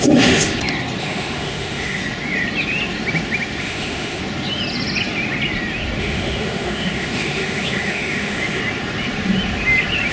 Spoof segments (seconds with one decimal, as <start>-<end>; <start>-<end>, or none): 0.0-0.5; 1.0-2.0; 3.6-4.2; 6.0-8.6